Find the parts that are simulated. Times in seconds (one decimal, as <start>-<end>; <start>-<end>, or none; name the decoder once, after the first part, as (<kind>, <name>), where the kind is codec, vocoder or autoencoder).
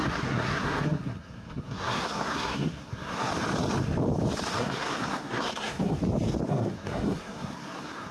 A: 0.0-3.3 (codec, SNAC); 4.6-6.0; 6.5-8.1